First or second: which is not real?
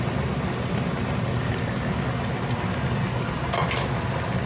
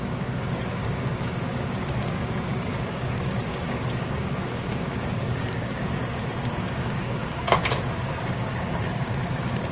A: second